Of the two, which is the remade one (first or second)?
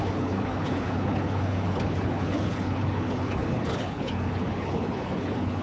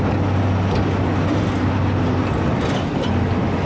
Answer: first